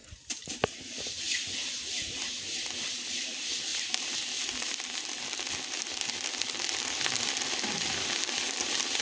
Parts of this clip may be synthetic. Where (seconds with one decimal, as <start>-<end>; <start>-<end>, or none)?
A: none